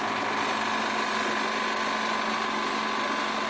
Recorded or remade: recorded